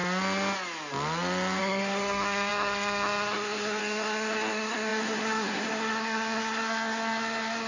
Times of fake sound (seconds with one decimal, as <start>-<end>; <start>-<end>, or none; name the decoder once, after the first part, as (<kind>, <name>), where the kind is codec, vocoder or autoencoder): 1.6-7.7 (codec, SNAC)